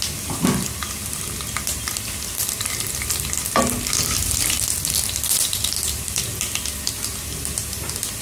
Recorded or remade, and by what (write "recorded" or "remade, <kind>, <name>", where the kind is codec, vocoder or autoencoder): recorded